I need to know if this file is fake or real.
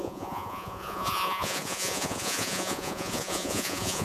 fake